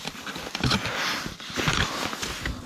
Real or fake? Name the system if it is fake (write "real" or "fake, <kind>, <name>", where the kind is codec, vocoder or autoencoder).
real